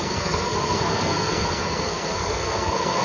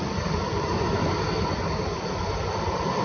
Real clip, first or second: second